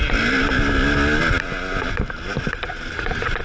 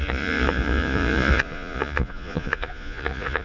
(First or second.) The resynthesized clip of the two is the second